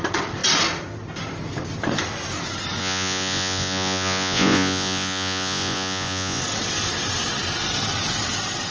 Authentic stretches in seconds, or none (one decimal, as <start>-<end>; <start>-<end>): 0.0-2.8; 6.4-8.7